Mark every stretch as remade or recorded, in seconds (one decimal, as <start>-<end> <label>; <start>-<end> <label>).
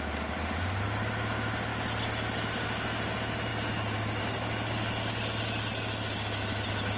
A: 0.0-7.0 recorded